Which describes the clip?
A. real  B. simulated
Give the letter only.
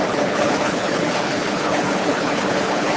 B